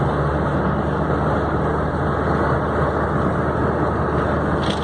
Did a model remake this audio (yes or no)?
no